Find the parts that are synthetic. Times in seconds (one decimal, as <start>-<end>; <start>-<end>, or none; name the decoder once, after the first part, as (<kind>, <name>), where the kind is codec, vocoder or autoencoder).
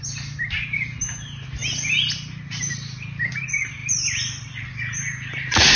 3.8-5.8 (vocoder, BigVGAN v2)